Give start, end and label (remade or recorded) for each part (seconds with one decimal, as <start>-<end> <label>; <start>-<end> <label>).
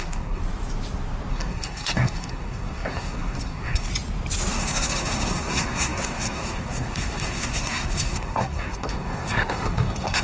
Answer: 0.0-0.4 remade; 0.4-1.3 recorded; 1.3-3.9 remade; 3.9-4.5 recorded; 4.5-10.2 remade